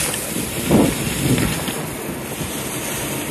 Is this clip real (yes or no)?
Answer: yes